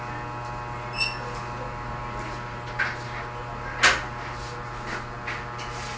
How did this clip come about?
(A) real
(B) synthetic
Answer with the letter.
A